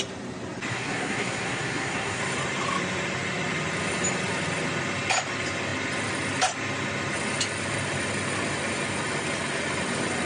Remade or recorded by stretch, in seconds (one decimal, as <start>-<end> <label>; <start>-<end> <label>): 0.0-0.7 recorded; 0.7-2.2 remade; 2.2-10.3 recorded